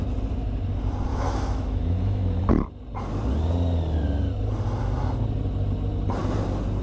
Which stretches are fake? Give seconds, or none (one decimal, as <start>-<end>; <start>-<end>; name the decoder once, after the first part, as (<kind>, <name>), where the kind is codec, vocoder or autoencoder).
1.1-2.4 (autoencoder, DAC-VAE)